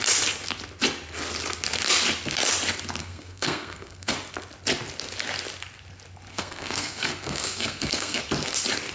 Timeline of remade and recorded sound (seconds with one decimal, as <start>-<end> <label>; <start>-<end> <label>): 0.0-3.0 recorded; 3.0-4.1 remade; 4.1-6.3 recorded; 6.3-8.2 remade; 8.2-8.9 recorded